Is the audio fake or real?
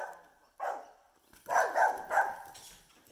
real